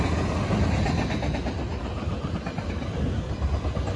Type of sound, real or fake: real